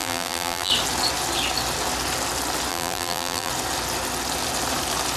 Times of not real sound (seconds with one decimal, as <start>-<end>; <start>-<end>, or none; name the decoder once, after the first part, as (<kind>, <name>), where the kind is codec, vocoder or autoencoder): 0.0-0.7 (vocoder, BigVGAN v2); 2.7-3.5